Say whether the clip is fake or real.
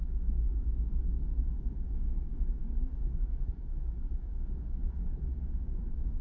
fake